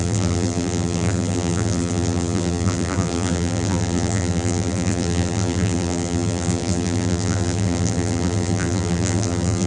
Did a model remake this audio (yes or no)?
yes